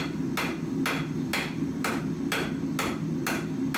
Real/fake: real